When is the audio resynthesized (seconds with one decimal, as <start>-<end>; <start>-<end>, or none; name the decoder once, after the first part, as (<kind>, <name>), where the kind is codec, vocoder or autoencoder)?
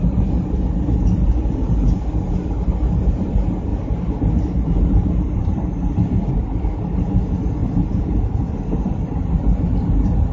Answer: none